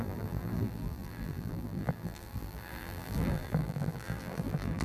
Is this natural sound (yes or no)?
no